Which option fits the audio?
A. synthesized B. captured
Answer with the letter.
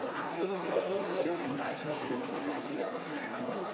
A